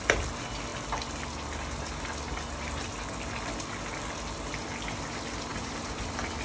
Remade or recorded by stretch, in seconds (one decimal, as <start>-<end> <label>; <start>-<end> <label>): 0.0-5.5 recorded; 5.5-6.0 remade; 6.0-6.4 recorded